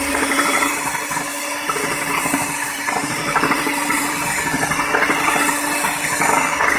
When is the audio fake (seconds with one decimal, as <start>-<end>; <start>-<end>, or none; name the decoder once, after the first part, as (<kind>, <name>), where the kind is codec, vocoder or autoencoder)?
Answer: 0.0-4.2 (vocoder, BigVGAN v2)